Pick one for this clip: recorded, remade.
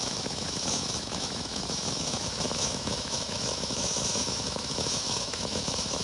remade